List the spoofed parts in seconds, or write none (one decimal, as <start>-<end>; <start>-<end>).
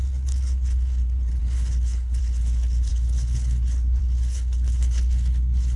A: 0.0-5.8